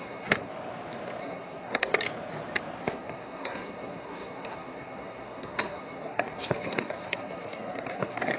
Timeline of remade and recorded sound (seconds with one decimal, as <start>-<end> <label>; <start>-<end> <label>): 0.0-0.5 remade; 0.5-1.2 recorded; 1.2-1.9 remade; 1.9-2.8 recorded; 2.8-8.4 remade